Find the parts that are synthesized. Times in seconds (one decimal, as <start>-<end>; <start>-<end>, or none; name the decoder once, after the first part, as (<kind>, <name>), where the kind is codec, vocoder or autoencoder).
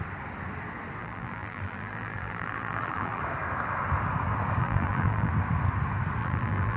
1.0-3.2 (vocoder, BigVGAN v2); 4.6-5.3; 6.2-6.8